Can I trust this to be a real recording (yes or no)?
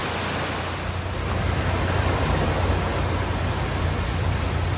yes